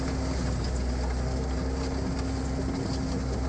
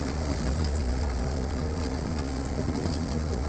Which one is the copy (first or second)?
second